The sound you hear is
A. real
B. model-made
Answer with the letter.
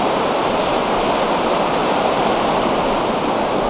A